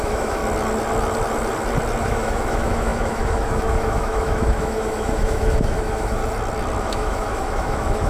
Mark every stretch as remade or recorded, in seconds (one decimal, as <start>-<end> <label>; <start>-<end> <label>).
0.0-0.4 remade; 0.4-2.0 recorded; 2.0-6.2 remade; 6.2-6.8 recorded; 6.8-8.1 remade